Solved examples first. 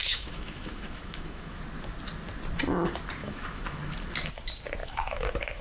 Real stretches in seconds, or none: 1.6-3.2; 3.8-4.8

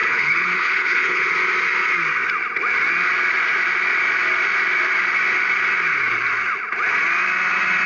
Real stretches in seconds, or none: 1.3-7.9

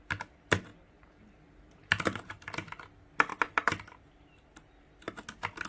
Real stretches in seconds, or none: 0.0-0.7; 2.2-3.3; 3.8-5.7

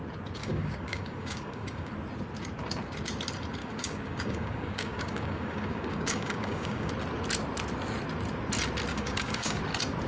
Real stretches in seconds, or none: 0.0-0.4; 1.9-3.6; 6.9-8.9; 9.6-10.1

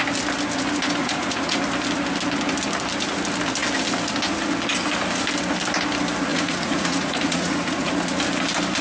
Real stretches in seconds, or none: 0.0-1.0; 1.6-6.3; 7.9-8.8